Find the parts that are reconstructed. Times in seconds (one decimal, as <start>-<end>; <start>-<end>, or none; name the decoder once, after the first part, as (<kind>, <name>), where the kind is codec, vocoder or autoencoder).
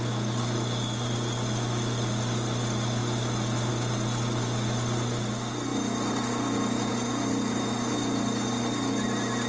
none